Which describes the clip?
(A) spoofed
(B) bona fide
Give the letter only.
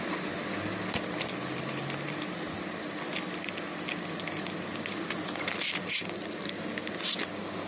B